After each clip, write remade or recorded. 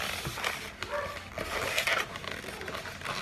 recorded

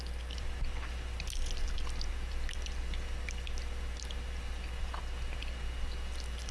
recorded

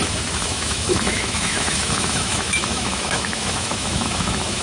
remade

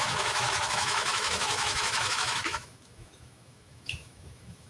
remade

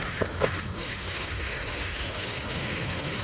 remade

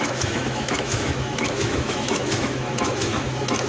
remade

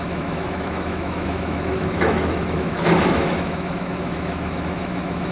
remade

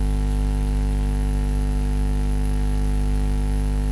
remade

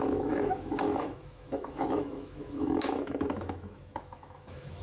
remade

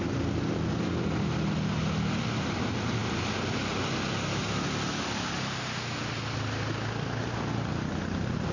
recorded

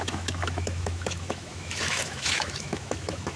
remade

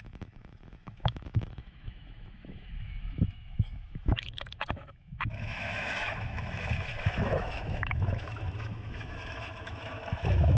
remade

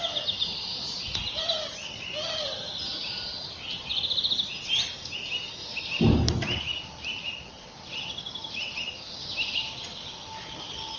recorded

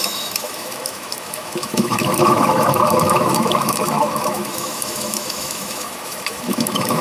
remade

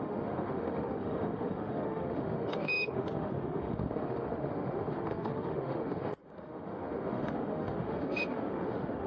remade